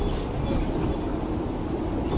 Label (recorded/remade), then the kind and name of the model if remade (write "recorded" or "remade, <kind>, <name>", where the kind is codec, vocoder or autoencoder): recorded